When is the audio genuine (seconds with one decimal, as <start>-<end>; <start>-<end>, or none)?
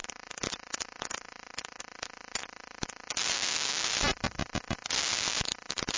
1.8-6.0